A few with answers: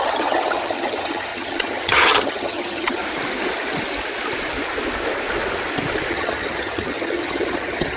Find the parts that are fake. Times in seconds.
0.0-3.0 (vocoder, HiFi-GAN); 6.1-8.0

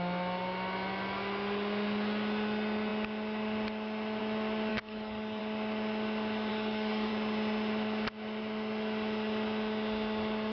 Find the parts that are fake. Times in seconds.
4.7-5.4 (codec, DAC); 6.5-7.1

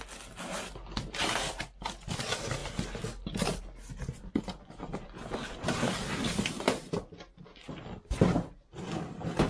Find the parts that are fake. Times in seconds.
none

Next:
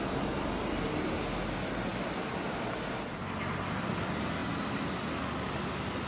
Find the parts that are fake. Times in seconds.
none

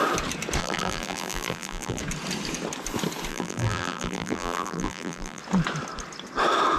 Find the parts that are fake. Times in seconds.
0.6-2.0 (vocoder, BigVGAN v2); 3.3-5.4